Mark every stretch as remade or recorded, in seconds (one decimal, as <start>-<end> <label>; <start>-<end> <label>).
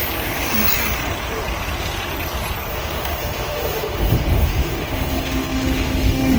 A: 0.0-2.7 recorded; 2.7-6.4 remade